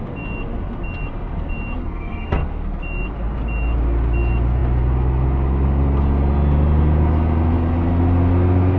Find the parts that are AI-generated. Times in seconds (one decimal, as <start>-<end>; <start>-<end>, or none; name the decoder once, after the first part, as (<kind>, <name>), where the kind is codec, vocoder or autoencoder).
1.8-2.8 (codec, SNAC)